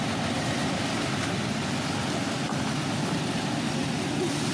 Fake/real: real